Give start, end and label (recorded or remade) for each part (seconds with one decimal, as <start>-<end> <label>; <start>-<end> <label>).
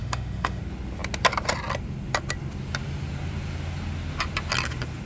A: 0.0-0.6 remade; 0.6-5.1 recorded